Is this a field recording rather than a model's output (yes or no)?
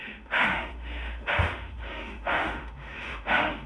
no